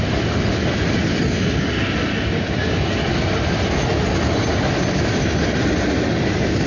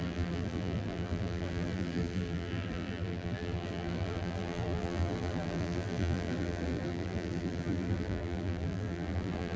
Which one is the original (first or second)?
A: first